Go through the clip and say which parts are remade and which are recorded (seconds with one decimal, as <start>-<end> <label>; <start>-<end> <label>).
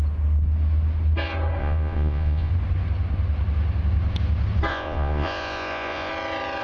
0.0-1.6 recorded; 1.6-2.5 remade; 2.5-4.7 recorded; 4.7-6.1 remade; 6.1-6.6 recorded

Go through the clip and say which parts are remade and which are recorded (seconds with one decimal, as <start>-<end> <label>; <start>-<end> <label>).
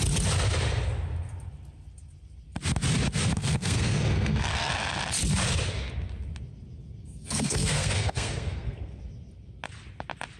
0.0-3.3 recorded; 3.3-4.7 remade; 4.7-7.0 recorded; 7.0-9.0 remade; 9.0-10.4 recorded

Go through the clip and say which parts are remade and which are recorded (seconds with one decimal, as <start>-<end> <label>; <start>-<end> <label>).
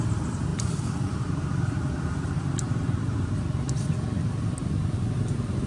0.0-0.5 recorded; 0.5-3.9 remade; 3.9-5.7 recorded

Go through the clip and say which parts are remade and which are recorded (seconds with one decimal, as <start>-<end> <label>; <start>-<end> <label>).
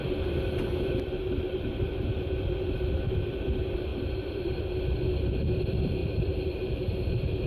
0.0-3.9 recorded; 3.9-4.6 remade; 4.6-6.0 recorded; 6.0-7.5 remade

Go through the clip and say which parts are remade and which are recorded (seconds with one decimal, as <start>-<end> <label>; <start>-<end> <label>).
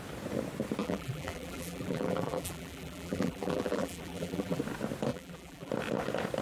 0.0-0.8 recorded; 0.8-4.6 remade; 4.6-5.1 recorded; 5.1-5.7 remade; 5.7-6.4 recorded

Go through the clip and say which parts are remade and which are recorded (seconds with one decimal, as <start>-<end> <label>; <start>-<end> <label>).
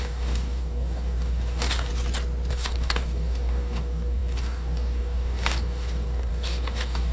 0.0-1.9 remade; 1.9-2.5 recorded; 2.5-7.1 remade